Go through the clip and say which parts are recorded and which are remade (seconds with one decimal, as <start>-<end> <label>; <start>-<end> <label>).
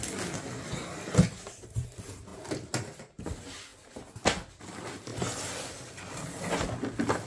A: 0.0-7.3 recorded